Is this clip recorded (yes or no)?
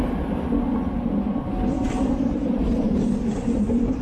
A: yes